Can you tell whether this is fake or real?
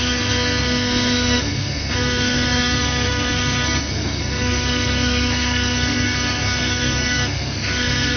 fake